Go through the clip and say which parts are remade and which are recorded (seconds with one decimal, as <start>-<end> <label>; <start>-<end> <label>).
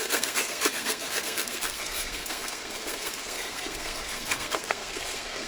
0.0-5.5 remade